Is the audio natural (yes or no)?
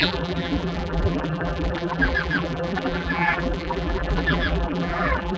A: no